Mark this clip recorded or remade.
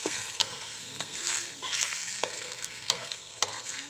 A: remade